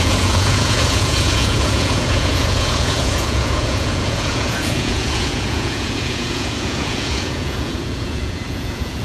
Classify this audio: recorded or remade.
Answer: remade